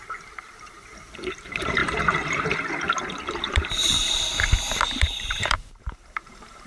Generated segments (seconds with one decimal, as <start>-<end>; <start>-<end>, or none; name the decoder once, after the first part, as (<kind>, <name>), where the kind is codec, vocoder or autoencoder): 0.0-6.7 (vocoder, BigVGAN v2)